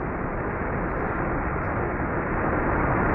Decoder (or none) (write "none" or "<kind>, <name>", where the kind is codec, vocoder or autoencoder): none